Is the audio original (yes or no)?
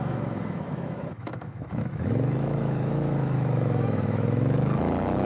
no